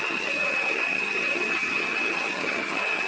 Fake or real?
fake